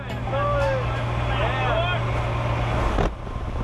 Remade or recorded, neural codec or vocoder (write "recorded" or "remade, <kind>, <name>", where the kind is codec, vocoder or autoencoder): recorded